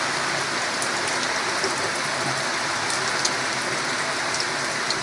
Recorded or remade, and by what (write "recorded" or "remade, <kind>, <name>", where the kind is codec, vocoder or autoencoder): recorded